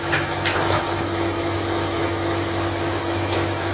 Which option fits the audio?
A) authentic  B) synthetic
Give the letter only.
B